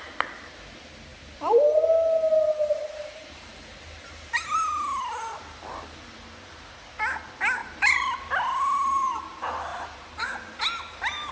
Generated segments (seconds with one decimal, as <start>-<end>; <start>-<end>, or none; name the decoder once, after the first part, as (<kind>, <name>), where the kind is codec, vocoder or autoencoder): 1.1-4.3 (vocoder, BigVGAN v2); 7.6-8.2; 9.7-10.3